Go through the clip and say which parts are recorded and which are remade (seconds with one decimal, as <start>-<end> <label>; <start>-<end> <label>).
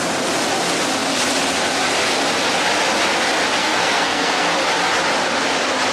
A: 0.0-3.6 recorded; 3.6-4.5 remade; 4.5-5.9 recorded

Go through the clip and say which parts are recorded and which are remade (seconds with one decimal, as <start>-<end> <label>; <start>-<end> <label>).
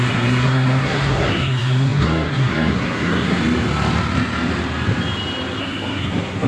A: 0.0-3.4 remade; 3.4-5.6 recorded; 5.6-6.5 remade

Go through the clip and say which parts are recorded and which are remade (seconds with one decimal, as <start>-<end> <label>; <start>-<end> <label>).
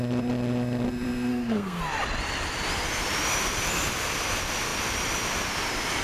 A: 0.0-1.3 recorded; 1.3-1.8 remade; 1.8-6.0 recorded